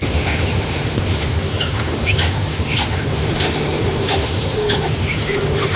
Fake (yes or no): yes